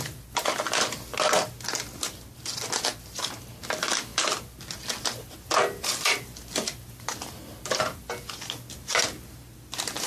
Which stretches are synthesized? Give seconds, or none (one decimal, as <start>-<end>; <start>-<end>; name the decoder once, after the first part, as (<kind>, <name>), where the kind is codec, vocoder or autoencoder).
none

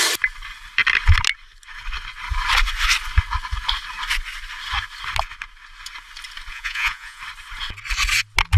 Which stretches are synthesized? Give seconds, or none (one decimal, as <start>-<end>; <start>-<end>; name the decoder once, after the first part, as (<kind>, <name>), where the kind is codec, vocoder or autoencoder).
6.5-7.2 (vocoder, Vocos)